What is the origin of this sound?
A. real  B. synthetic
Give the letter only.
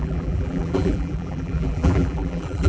B